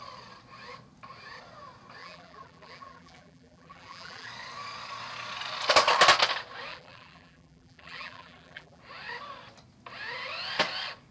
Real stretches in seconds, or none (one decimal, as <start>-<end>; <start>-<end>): 0.0-2.0; 4.3-6.7; 8.8-11.1